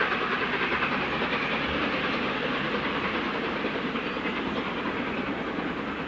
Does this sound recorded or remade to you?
recorded